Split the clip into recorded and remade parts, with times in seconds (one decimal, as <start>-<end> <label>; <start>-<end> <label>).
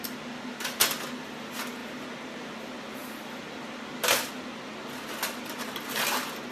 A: 0.0-6.5 recorded